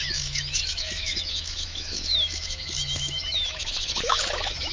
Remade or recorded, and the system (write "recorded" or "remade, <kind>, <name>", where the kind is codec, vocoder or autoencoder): remade, autoencoder, DAC-VAE